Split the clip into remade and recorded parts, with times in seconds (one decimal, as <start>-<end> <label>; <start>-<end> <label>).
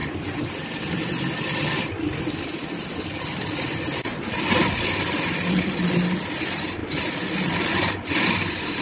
0.0-8.8 recorded